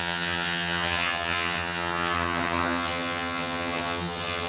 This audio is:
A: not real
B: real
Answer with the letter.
A